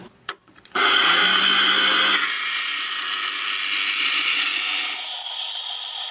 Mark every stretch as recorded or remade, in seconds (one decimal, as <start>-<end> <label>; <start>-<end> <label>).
0.0-1.2 remade; 1.2-4.0 recorded; 4.0-4.5 remade; 4.5-5.2 recorded; 5.2-6.1 remade